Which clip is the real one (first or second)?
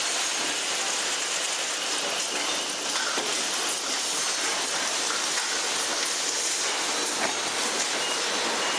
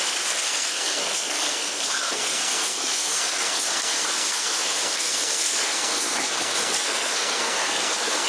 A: first